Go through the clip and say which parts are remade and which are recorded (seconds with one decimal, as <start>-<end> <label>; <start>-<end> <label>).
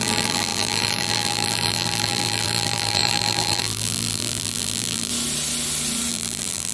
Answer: 0.0-5.1 remade; 5.1-6.1 recorded; 6.1-6.7 remade